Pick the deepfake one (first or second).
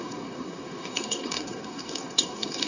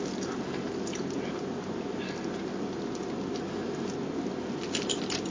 first